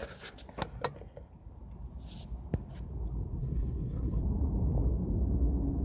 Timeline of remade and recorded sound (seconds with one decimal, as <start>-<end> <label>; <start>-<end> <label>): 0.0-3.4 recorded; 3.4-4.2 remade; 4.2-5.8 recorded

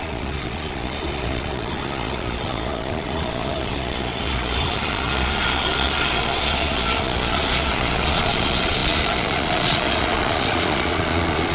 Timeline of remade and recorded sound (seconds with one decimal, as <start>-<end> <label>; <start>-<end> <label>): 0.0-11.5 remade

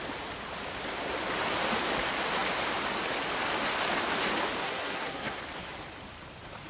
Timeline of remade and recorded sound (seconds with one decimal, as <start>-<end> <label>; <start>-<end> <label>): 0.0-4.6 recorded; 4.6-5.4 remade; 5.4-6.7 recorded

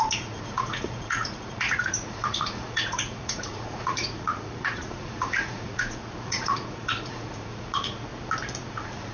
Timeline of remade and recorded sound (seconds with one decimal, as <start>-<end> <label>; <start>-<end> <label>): 0.0-8.1 remade; 8.1-8.7 recorded; 8.7-9.1 remade

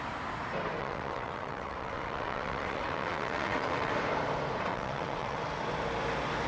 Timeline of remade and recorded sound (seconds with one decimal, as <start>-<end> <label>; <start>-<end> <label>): 0.0-0.8 recorded; 0.8-3.9 remade; 3.9-4.7 recorded; 4.7-5.4 remade; 5.4-6.5 recorded

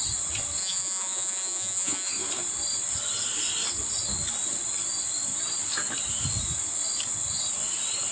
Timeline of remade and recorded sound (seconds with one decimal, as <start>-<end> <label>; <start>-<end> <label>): 0.0-0.6 recorded; 0.6-2.1 remade; 2.1-8.1 recorded

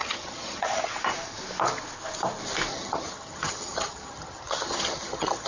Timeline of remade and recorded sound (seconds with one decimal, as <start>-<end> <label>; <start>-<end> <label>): 0.0-0.9 remade; 0.9-2.7 recorded; 2.7-5.5 remade